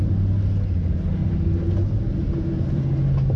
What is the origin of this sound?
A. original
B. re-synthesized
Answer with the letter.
A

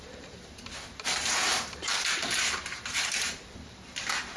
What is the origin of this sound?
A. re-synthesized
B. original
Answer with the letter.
A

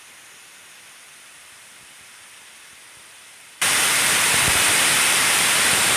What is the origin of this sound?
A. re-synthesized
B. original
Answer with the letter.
A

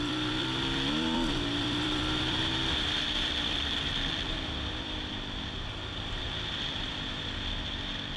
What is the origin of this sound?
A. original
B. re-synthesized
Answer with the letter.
B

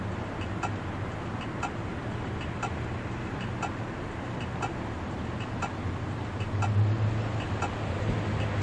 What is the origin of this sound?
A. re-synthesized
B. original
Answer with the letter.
B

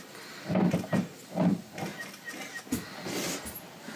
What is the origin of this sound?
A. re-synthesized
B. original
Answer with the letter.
B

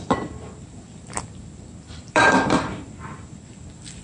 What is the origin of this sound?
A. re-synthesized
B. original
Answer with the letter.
A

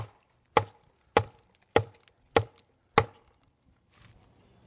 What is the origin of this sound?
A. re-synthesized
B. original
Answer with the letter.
B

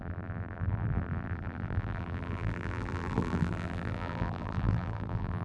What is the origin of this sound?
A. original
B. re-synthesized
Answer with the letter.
B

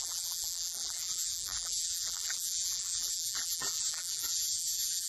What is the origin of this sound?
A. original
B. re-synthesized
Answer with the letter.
B